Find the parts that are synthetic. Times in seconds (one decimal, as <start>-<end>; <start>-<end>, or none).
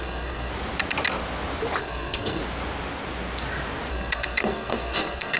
0.0-0.5; 1.8-2.4; 3.9-5.4